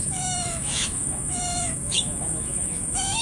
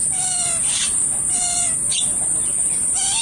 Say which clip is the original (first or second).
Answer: second